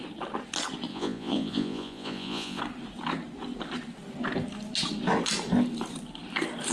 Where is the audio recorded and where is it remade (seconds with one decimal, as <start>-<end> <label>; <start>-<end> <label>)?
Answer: 0.0-0.9 recorded; 0.9-2.6 remade; 2.6-6.7 recorded